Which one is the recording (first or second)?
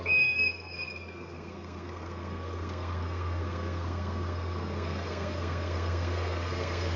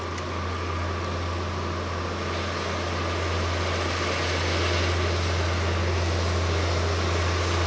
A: second